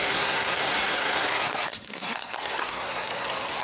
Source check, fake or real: fake